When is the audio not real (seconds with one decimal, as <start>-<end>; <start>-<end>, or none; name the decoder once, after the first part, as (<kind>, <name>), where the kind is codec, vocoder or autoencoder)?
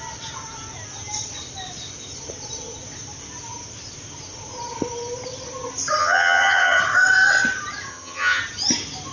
6.0-6.8 (vocoder, HiFi-GAN); 7.9-8.4